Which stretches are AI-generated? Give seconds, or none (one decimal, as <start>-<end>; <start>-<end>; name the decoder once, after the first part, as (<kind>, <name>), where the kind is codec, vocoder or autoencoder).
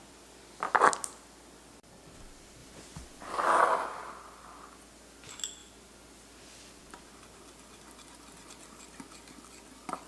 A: none